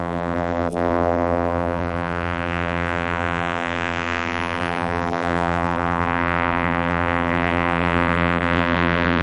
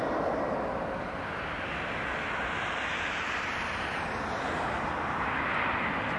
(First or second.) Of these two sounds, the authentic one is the second